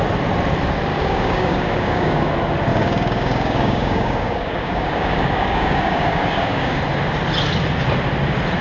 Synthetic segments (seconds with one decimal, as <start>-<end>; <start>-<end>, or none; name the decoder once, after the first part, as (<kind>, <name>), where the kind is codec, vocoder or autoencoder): 0.9-2.3 (codec, DAC); 2.7-6.8